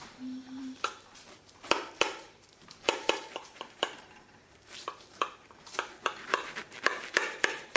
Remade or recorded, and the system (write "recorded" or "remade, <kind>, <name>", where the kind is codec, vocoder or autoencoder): remade, vocoder, BigVGAN v2